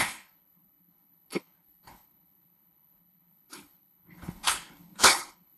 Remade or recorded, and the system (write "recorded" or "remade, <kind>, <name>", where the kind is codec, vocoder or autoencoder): remade, codec, HILCodec